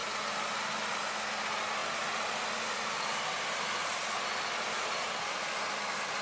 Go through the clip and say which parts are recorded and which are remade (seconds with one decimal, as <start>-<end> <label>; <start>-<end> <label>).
0.0-6.2 recorded